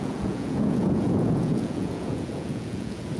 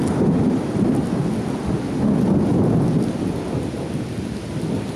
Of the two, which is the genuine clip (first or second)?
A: second